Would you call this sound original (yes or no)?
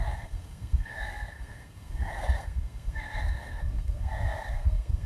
no